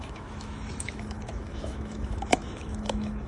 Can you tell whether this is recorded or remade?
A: remade